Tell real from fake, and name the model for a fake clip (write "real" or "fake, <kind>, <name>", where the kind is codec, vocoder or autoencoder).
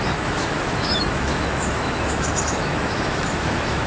fake, autoencoder, DAC-VAE